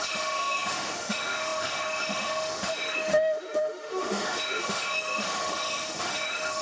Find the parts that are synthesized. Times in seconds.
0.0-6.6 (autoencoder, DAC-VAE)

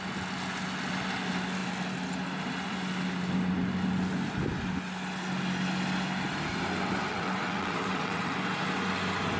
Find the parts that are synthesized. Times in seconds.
7.1-8.3 (vocoder, WaveNeXt)

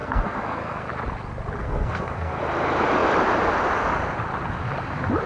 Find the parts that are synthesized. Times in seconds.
0.0-0.9 (codec, SNAC); 1.6-2.4

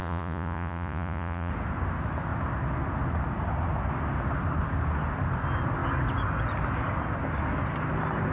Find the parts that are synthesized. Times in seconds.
0.0-1.5 (vocoder, Vocos)